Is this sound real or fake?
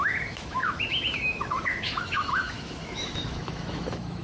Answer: fake